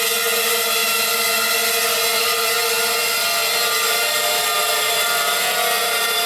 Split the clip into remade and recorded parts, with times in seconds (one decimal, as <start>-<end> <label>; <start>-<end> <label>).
0.0-6.3 recorded